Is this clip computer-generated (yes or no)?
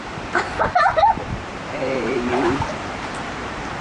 yes